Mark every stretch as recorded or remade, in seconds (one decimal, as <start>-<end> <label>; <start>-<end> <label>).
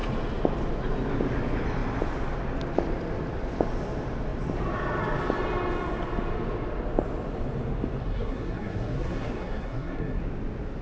0.0-8.0 recorded; 8.0-10.2 remade; 10.2-10.8 recorded